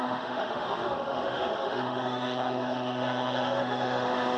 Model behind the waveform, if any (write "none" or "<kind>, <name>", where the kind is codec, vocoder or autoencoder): autoencoder, DAC-VAE